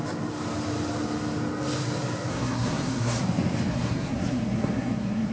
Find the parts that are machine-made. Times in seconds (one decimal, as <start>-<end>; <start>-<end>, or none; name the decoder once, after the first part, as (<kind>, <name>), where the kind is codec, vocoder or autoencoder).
2.3-3.2 (codec, SNAC); 3.7-5.3